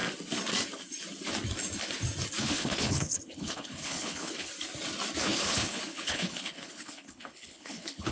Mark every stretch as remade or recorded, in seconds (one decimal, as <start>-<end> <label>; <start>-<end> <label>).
0.0-2.4 recorded; 2.4-4.5 remade; 4.5-5.2 recorded; 5.2-8.1 remade